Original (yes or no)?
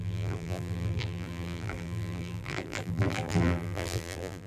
no